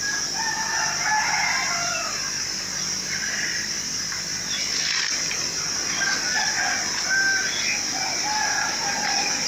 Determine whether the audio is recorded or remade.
recorded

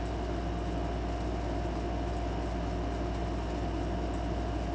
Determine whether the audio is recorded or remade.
recorded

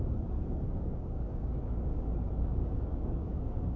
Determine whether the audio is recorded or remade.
remade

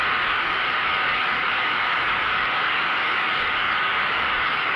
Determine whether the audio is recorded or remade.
remade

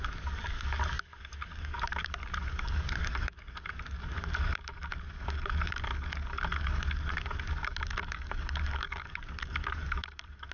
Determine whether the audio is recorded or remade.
remade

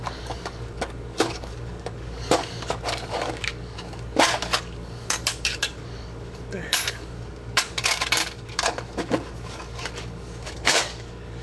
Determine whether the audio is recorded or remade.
remade